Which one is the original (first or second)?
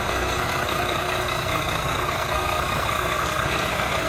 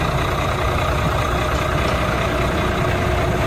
second